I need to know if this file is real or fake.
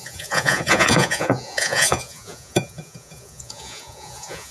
fake